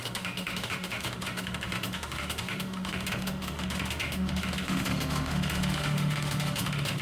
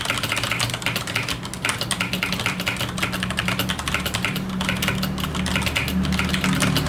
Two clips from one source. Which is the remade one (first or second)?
first